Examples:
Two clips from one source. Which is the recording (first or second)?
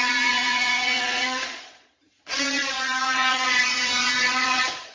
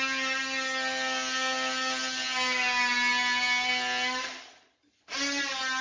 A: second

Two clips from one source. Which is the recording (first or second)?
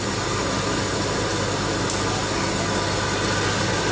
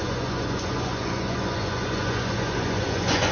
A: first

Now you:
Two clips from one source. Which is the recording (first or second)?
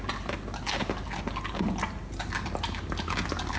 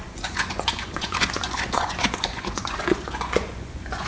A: first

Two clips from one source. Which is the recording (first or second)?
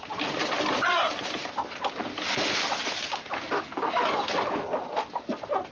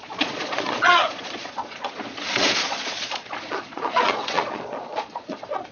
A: first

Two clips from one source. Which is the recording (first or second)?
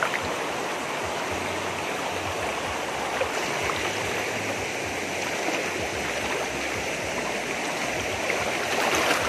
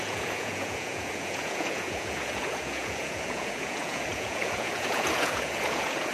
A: first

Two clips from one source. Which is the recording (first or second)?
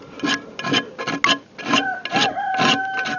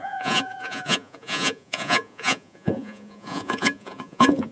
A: first